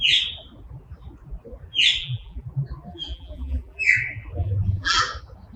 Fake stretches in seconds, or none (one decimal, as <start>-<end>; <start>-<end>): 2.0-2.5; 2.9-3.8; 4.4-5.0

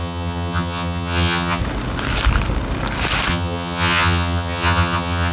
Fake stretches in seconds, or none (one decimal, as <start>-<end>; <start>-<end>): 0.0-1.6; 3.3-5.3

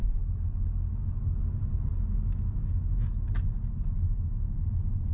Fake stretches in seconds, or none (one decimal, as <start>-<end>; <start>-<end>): none